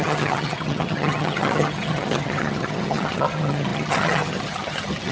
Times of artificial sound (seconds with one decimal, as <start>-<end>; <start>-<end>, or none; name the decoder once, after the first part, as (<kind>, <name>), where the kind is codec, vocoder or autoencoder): 0.0-5.1 (vocoder, HiFi-GAN)